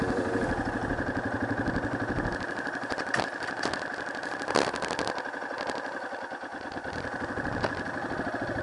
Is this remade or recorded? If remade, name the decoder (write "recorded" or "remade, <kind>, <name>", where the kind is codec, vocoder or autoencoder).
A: recorded